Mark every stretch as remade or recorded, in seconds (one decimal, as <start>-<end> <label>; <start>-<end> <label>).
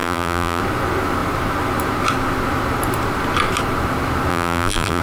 0.0-0.6 remade; 0.6-4.3 recorded; 4.3-5.0 remade